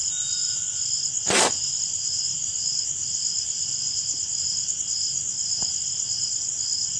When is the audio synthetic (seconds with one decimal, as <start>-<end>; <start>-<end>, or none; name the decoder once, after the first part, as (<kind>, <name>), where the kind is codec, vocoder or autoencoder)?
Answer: none